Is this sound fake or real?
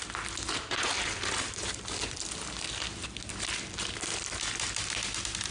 real